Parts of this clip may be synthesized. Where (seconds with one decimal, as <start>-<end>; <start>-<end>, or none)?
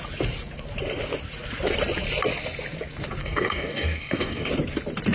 3.2-4.5